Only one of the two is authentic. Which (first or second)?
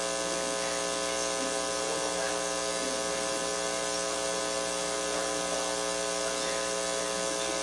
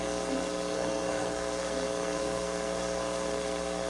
first